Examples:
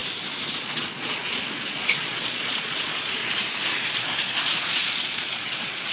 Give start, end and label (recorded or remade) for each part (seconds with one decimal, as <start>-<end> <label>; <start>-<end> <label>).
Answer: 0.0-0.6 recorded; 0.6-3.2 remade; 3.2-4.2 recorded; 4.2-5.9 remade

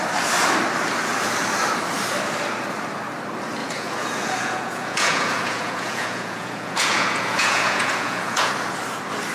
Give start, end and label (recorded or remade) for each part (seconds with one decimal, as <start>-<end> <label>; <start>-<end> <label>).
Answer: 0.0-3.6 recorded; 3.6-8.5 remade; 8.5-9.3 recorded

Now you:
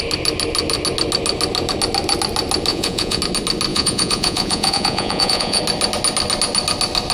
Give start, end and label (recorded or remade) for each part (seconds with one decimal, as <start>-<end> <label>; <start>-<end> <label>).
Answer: 0.0-2.7 recorded; 2.7-3.2 remade; 3.2-3.7 recorded; 3.7-5.6 remade; 5.6-7.1 recorded